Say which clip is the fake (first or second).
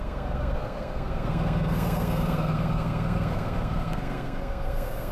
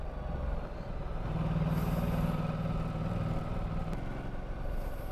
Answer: first